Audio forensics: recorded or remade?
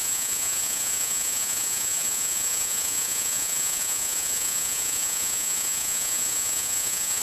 remade